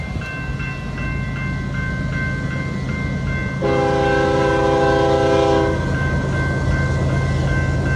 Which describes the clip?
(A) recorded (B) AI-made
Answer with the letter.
A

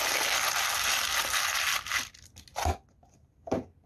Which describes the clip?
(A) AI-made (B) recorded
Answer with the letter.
B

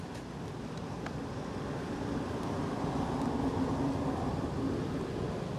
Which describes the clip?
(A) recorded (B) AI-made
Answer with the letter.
A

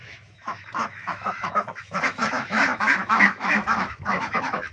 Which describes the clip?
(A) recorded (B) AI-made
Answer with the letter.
B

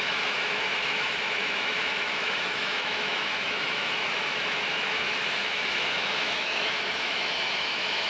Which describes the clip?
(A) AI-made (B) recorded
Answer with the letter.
A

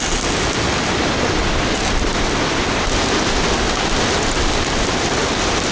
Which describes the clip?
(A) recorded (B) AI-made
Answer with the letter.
A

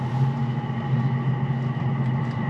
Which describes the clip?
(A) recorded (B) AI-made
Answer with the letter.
A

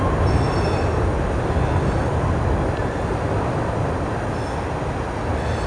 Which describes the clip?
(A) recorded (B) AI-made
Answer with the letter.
A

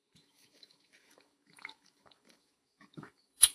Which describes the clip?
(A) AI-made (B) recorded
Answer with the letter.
A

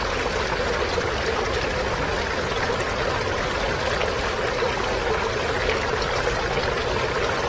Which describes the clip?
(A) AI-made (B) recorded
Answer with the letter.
B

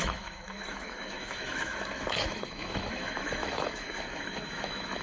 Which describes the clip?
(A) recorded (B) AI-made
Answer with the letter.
B